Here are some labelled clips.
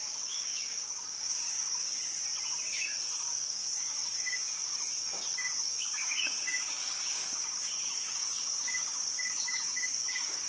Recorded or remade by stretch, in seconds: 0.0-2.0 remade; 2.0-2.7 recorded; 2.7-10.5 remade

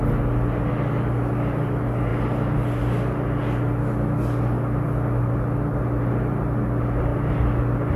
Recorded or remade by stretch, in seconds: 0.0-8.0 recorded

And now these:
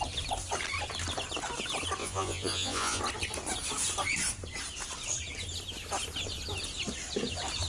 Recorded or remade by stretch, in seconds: 0.0-2.0 recorded; 2.0-3.0 remade; 3.0-7.7 recorded

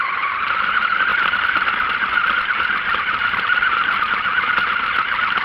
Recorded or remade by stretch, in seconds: 0.0-3.2 recorded; 3.2-4.0 remade; 4.0-5.4 recorded

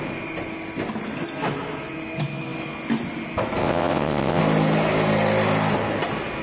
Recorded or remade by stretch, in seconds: 0.0-3.6 recorded; 3.6-4.4 remade; 4.4-6.4 recorded

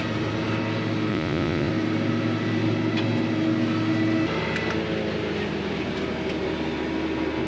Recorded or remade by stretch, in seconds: 0.0-1.1 recorded; 1.1-1.7 remade; 1.7-7.5 recorded